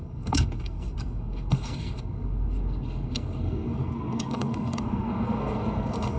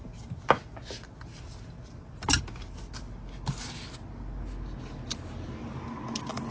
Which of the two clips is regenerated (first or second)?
first